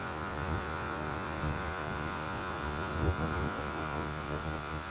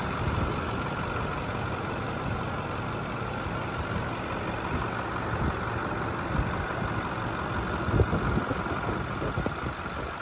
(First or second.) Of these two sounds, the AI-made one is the first